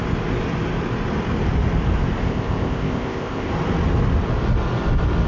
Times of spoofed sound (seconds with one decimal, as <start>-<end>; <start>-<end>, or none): 2.2-3.5